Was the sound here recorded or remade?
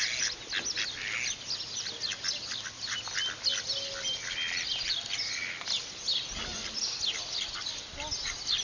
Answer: recorded